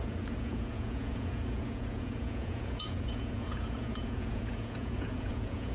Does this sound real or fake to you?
fake